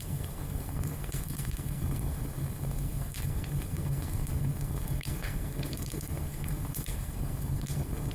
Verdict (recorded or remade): remade